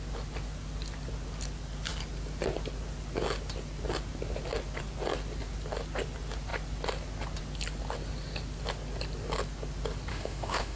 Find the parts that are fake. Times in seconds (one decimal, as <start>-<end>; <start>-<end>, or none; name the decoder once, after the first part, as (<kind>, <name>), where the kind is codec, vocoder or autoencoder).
10.1-10.8 (autoencoder, DAC-VAE)

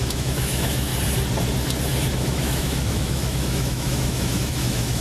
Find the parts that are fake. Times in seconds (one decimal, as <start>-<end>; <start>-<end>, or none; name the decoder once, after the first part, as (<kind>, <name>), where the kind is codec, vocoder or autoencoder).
0.0-0.9 (autoencoder, DAC-VAE); 2.1-5.0

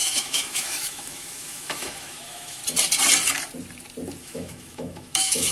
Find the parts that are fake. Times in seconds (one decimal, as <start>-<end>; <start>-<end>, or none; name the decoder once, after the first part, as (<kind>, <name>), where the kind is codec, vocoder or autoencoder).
0.0-2.6 (autoencoder, DAC-VAE); 4.2-5.5

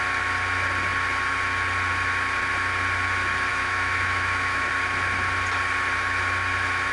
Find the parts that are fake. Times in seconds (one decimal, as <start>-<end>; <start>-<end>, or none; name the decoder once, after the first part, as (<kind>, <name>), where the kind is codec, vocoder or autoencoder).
3.5-4.7 (autoencoder, DAC-VAE)

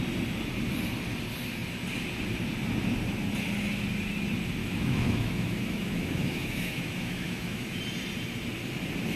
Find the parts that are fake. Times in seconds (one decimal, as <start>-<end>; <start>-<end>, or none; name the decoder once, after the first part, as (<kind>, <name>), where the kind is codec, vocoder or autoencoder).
4.6-7.8 (autoencoder, DAC-VAE)